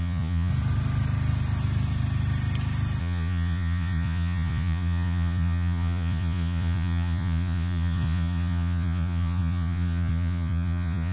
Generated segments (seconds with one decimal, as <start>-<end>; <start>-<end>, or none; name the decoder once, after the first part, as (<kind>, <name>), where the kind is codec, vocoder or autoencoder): 0.0-0.5 (vocoder, Vocos); 3.0-11.1